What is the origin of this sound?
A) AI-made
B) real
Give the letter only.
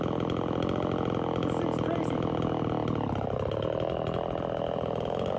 B